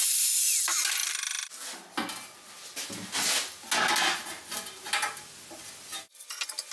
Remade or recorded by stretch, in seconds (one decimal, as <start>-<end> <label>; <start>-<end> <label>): 0.0-6.7 recorded